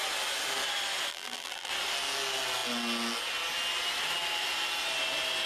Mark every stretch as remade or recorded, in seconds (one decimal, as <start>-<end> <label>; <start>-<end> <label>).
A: 0.0-1.1 recorded; 1.1-1.7 remade; 1.7-5.5 recorded